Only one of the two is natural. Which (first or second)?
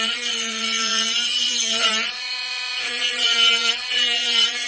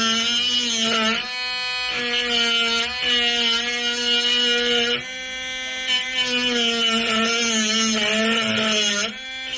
second